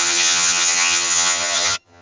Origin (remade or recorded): remade